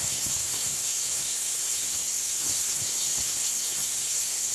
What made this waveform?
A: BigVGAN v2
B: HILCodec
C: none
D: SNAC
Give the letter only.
D